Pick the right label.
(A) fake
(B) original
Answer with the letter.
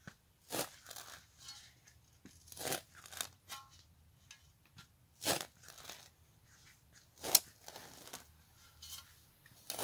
B